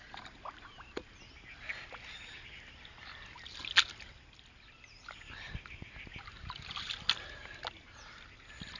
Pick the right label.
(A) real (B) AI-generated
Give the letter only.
A